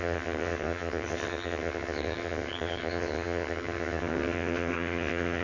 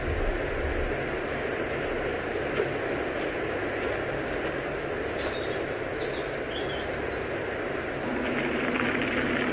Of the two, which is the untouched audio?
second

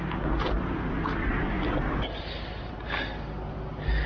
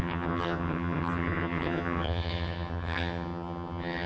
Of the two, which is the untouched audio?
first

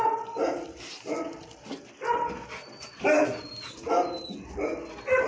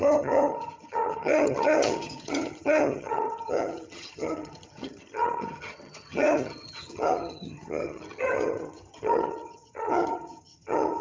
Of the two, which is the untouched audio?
first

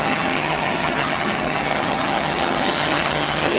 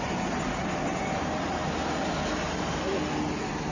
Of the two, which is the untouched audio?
second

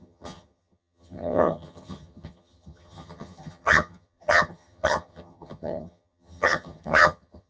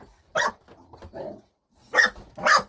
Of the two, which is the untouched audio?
second